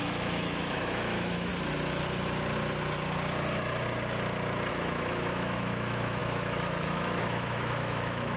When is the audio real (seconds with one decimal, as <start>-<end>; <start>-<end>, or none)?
1.5-4.7